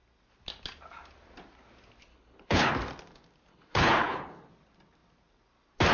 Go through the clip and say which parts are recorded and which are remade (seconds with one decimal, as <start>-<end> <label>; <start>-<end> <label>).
0.0-2.1 recorded; 2.1-2.7 remade; 2.7-3.5 recorded; 3.5-4.5 remade; 4.5-5.9 recorded